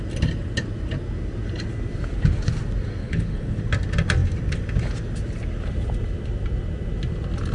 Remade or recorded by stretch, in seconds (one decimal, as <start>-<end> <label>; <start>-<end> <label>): 0.0-3.0 recorded; 3.0-3.6 remade; 3.6-7.5 recorded